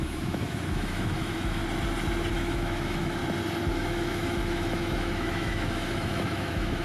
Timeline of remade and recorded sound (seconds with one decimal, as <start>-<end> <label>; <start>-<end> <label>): 0.0-1.6 remade; 1.6-2.3 recorded; 2.3-3.2 remade; 3.2-3.7 recorded; 3.7-6.8 remade